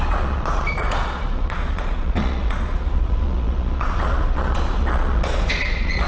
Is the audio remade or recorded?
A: remade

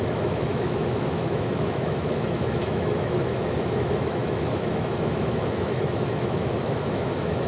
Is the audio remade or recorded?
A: remade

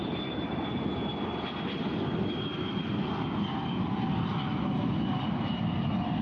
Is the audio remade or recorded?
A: recorded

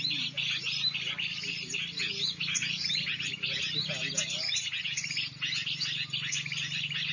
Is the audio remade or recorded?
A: recorded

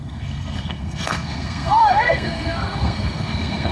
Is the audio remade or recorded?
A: remade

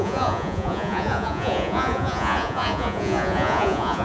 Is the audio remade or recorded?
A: remade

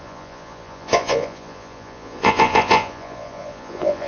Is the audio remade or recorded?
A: remade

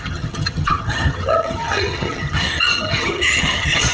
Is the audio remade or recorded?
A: remade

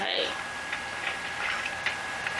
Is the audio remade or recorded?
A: recorded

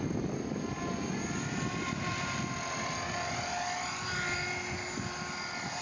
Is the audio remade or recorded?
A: recorded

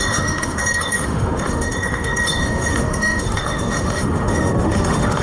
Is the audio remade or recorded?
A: remade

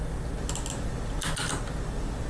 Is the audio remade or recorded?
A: recorded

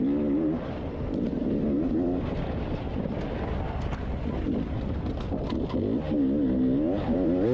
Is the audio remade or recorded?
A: recorded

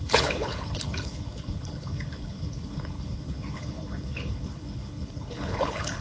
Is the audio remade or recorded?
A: remade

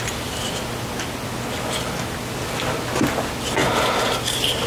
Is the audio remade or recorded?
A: recorded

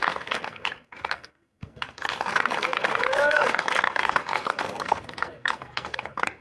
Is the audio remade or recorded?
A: remade